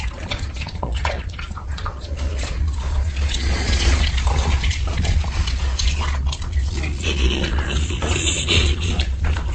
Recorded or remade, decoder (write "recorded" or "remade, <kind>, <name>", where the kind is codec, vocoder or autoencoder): remade, vocoder, Vocos